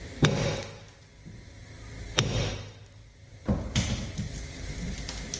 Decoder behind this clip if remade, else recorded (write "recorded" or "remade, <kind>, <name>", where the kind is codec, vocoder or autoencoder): recorded